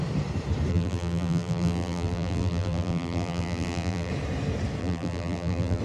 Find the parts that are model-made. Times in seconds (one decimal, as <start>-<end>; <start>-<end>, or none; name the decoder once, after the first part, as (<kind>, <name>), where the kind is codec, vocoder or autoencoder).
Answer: 0.7-4.1 (vocoder, BigVGAN v2); 4.8-5.8